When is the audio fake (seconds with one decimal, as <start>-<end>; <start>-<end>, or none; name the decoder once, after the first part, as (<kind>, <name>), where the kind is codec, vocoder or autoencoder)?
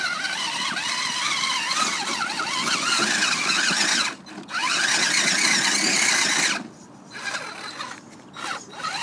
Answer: 0.8-1.6 (vocoder, BigVGAN v2)